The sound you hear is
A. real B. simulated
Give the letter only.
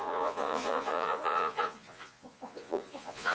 B